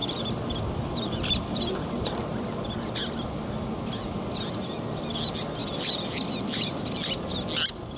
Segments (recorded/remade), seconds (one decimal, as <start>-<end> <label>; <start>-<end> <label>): 0.0-2.1 remade; 2.1-5.6 recorded; 5.6-6.8 remade; 6.8-8.0 recorded